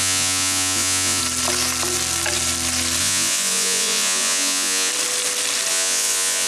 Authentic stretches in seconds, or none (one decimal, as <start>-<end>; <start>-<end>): 1.2-3.0; 4.9-5.7